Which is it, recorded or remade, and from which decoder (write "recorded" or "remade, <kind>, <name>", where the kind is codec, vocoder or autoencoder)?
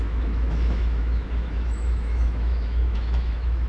remade, autoencoder, DAC-VAE